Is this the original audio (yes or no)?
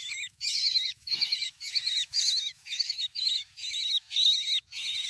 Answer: no